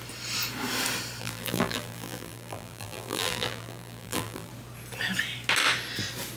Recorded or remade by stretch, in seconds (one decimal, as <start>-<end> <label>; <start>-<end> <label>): 0.0-1.2 recorded; 1.2-4.5 remade; 4.5-6.4 recorded